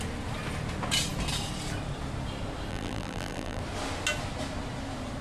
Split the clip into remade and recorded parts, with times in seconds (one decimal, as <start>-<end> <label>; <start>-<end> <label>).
0.0-2.7 recorded; 2.7-3.6 remade; 3.6-5.2 recorded